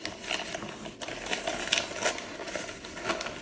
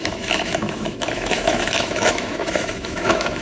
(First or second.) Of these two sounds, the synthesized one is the second